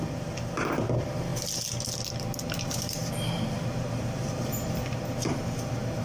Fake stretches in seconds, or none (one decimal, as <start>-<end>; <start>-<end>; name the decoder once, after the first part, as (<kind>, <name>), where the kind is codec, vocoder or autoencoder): 0.0-1.3 (vocoder, BigVGAN v2); 2.5-6.0